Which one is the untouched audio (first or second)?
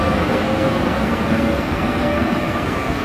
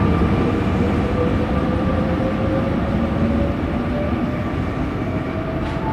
second